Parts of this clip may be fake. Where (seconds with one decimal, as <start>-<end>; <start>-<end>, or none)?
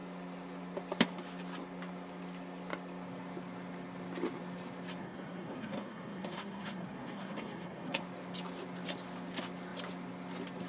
5.0-8.0